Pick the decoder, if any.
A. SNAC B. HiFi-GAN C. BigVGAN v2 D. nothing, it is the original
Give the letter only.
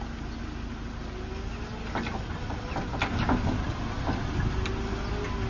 D